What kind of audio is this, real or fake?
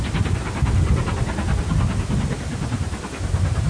real